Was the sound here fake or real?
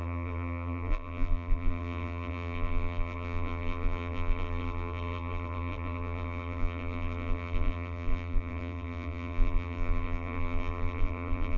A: fake